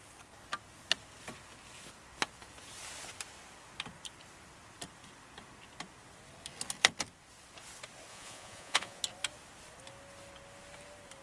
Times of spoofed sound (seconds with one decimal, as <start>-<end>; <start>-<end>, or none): 8.1-9.0